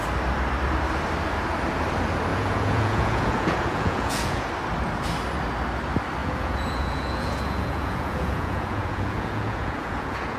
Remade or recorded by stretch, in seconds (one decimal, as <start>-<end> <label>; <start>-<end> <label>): 0.0-2.3 recorded; 2.3-4.5 remade; 4.5-6.2 recorded; 6.2-10.4 remade